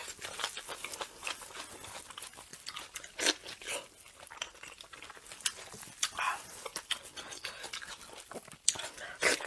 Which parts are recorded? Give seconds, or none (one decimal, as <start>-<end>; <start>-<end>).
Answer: 0.0-9.5